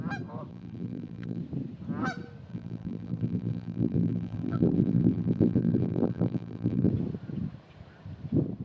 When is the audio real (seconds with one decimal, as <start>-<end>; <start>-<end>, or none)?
0.0-0.5; 1.4-2.5; 6.9-8.6

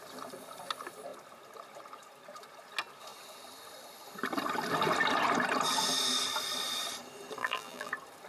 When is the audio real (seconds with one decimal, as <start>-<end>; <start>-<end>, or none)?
0.0-7.4; 7.9-8.3

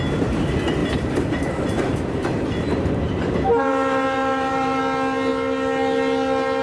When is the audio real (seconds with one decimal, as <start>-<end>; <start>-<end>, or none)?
0.0-0.8; 4.8-6.6

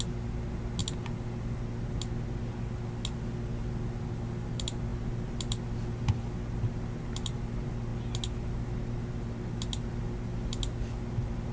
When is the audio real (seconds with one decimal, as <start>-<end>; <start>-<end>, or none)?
0.0-11.5